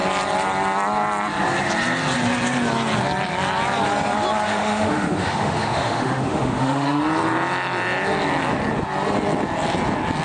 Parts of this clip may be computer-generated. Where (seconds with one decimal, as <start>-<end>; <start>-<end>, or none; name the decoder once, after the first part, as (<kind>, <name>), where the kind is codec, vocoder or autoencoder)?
4.5-7.0 (autoencoder, DAC-VAE)